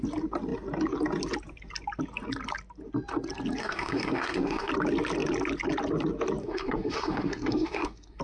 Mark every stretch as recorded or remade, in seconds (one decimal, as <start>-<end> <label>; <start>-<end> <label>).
0.0-3.6 recorded; 3.6-4.7 remade; 4.7-6.4 recorded; 6.4-8.2 remade